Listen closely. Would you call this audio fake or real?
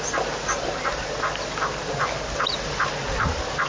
real